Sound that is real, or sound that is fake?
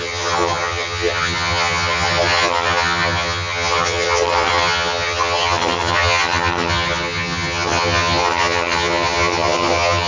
fake